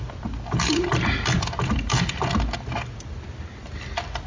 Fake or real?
real